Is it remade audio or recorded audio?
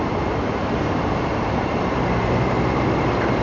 remade